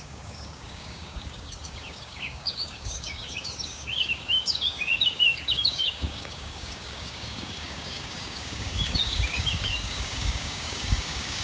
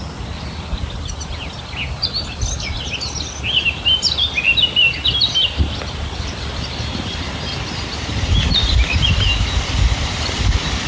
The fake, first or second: first